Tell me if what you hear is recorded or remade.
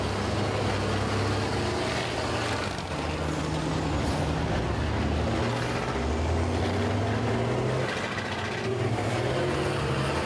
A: recorded